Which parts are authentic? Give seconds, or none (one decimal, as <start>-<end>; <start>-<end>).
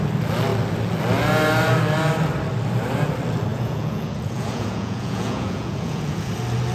0.0-3.5; 6.3-6.7